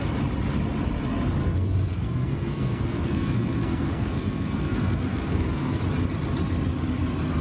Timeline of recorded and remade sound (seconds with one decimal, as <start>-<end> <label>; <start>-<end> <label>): 0.0-1.4 recorded; 1.4-5.8 remade; 5.8-7.4 recorded